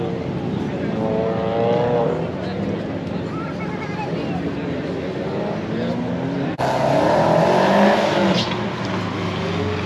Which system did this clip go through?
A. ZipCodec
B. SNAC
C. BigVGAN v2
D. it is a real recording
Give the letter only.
D